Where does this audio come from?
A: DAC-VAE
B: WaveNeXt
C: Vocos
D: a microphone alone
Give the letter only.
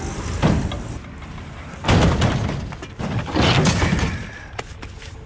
D